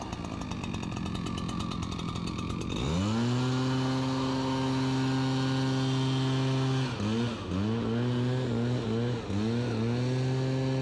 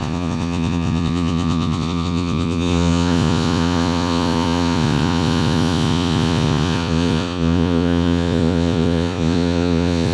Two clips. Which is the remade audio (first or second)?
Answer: second